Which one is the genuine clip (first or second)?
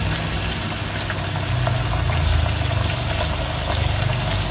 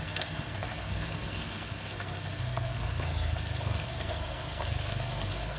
first